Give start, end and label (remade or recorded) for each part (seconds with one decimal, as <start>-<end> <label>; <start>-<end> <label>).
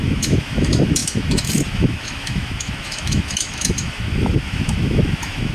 0.0-5.5 remade